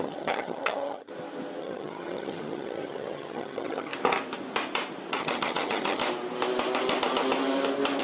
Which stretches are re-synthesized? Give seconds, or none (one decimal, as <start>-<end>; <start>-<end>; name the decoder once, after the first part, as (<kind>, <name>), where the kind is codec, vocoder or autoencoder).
0.0-1.1 (vocoder, HiFi-GAN); 1.6-3.9; 5.1-6.0